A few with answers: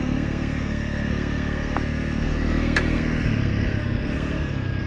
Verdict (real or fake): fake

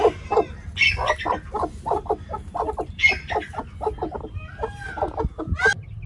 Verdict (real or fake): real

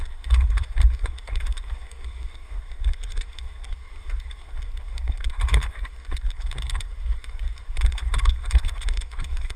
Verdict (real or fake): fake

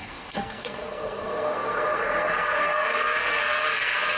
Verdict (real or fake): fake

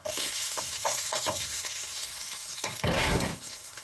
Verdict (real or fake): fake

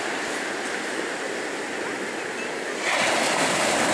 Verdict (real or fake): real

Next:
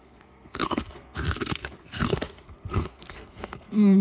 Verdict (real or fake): fake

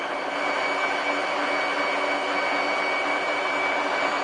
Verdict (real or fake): real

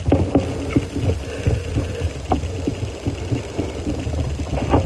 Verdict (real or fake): real